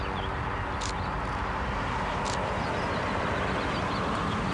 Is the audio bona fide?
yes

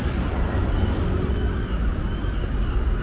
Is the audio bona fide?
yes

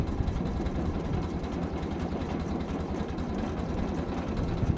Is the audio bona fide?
yes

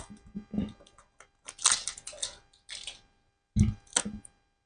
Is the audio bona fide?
yes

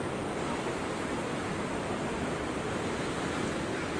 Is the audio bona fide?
yes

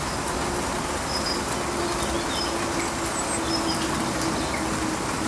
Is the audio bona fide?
yes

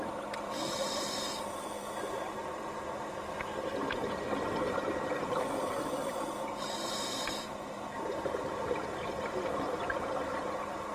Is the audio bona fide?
no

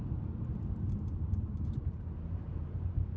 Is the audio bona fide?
no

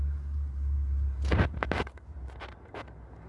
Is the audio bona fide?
yes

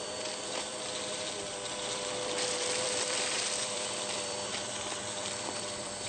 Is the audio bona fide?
no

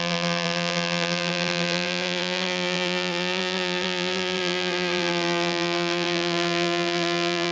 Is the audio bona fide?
no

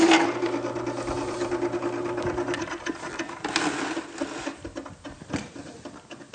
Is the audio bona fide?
yes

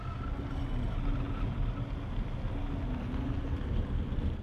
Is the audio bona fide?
yes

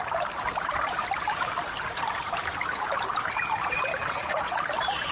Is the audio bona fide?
no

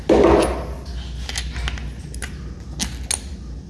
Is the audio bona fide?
yes